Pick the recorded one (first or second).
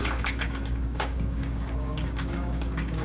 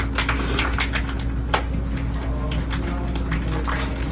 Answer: second